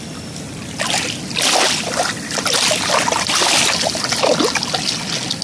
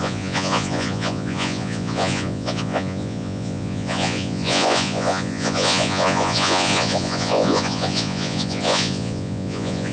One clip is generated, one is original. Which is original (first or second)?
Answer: first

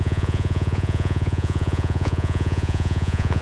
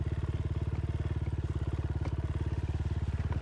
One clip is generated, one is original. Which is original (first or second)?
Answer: second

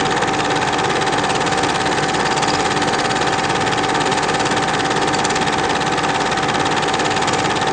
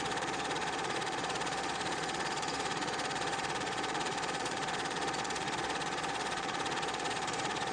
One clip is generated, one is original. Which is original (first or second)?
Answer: first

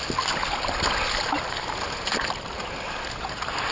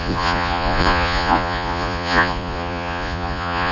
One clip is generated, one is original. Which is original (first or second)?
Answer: first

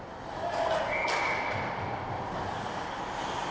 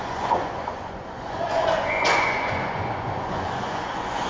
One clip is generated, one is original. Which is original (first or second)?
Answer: first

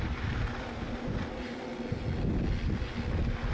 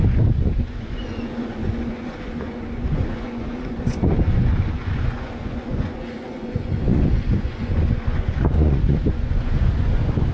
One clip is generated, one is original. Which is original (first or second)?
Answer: first